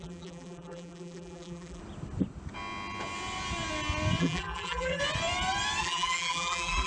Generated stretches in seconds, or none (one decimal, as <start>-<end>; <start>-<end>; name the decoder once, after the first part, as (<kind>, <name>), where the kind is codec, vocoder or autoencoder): 0.0-1.8 (vocoder, BigVGAN v2); 4.2-5.0; 5.8-6.9

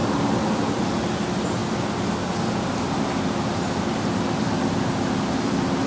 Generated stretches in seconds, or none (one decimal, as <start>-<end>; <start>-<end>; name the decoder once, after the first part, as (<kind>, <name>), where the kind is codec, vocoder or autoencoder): none

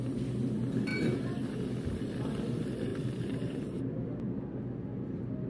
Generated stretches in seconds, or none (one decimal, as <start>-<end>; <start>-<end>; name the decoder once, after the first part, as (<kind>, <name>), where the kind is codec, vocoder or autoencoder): 2.9-3.8 (vocoder, BigVGAN v2)

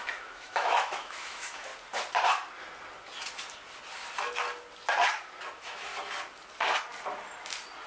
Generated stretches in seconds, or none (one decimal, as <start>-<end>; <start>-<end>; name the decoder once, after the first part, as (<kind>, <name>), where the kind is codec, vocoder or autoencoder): 0.0-1.7 (autoencoder, DAC-VAE); 5.5-5.9

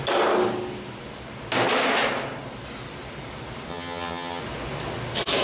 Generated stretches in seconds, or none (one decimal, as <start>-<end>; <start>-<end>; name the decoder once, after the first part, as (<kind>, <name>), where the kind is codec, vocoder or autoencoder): 3.7-4.4 (vocoder, HiFi-GAN)

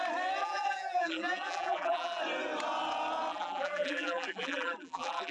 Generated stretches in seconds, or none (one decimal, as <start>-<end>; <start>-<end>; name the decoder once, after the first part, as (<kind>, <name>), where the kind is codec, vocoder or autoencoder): 0.4-2.2 (vocoder, BigVGAN v2); 3.3-5.3